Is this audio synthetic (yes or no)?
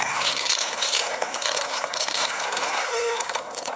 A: yes